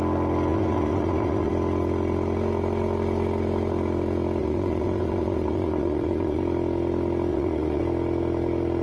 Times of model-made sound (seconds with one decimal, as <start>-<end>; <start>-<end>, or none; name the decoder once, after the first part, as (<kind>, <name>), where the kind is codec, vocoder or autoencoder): 0.5-1.5 (vocoder, Vocos); 4.4-6.4; 7.3-7.8